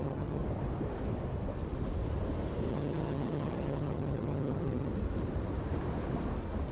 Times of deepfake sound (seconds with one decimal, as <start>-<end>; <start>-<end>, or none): 0.0-0.4; 2.7-4.9